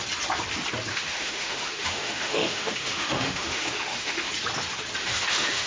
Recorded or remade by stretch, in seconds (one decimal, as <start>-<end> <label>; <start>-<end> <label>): 0.0-0.9 recorded; 0.9-4.3 remade; 4.3-5.0 recorded; 5.0-5.7 remade